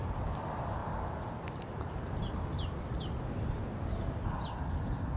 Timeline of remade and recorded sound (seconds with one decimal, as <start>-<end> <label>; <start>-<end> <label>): 0.0-5.2 recorded